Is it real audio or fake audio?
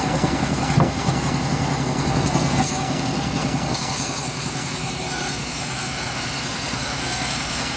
fake